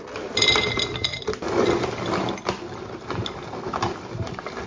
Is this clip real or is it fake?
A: real